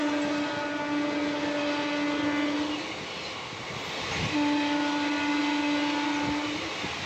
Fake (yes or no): no